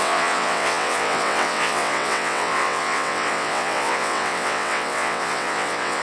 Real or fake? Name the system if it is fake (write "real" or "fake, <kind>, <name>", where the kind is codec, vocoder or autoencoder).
fake, vocoder, WaveNeXt